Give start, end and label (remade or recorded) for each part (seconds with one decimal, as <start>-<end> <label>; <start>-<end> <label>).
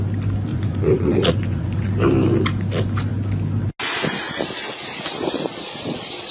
0.0-0.5 recorded; 0.5-1.9 remade; 1.9-6.3 recorded